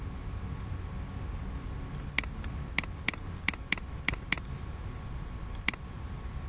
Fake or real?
real